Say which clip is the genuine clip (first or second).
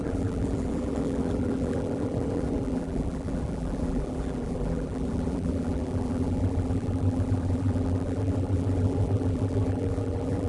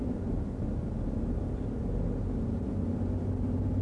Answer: second